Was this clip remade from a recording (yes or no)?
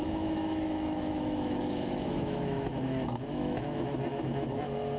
yes